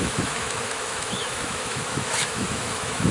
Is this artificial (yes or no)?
yes